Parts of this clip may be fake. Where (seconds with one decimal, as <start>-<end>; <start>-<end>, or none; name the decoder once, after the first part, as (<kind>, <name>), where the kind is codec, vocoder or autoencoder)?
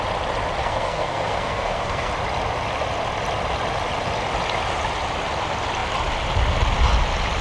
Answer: 0.6-2.1 (codec, SNAC)